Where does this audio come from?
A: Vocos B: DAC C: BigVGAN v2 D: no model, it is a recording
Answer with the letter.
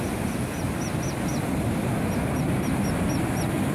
D